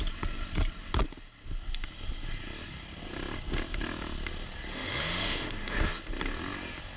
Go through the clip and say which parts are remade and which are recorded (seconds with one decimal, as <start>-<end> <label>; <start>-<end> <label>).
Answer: 0.0-4.7 recorded; 4.7-5.9 remade; 5.9-7.0 recorded

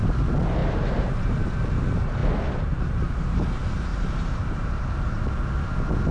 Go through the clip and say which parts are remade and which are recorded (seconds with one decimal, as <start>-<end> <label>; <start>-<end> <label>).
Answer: 0.0-0.6 recorded; 0.6-1.5 remade; 1.5-3.9 recorded; 3.9-5.2 remade; 5.2-6.1 recorded

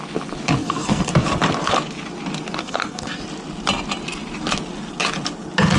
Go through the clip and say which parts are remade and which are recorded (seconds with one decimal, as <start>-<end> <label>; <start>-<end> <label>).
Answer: 0.0-0.6 recorded; 0.6-1.1 remade; 1.1-2.6 recorded; 2.6-3.2 remade; 3.2-5.8 recorded

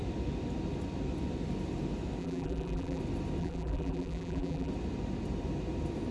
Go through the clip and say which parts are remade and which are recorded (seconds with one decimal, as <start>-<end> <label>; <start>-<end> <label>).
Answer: 0.0-2.2 recorded; 2.2-3.0 remade; 3.0-3.4 recorded; 3.4-4.7 remade; 4.7-6.1 recorded

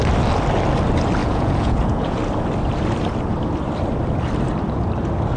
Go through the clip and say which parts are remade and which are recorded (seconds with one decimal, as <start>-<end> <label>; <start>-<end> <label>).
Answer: 0.0-1.2 recorded; 1.2-2.2 remade; 2.2-5.4 recorded

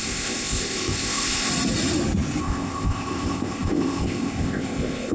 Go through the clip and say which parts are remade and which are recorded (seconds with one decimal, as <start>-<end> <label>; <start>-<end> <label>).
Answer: 0.0-1.5 remade; 1.5-2.4 recorded; 2.4-5.1 remade

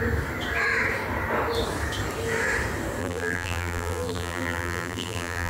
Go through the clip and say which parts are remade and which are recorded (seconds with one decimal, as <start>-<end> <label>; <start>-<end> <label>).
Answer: 0.0-3.0 recorded; 3.0-5.5 remade

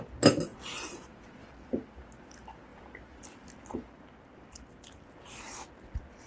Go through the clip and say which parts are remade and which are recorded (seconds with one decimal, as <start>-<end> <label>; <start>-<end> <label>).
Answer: 0.0-6.3 recorded